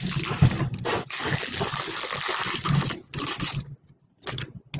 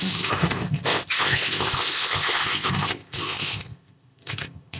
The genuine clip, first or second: first